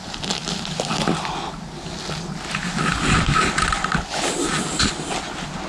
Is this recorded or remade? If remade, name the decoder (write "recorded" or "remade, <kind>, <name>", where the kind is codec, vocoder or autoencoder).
recorded